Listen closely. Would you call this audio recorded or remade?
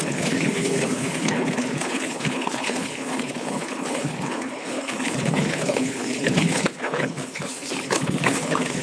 remade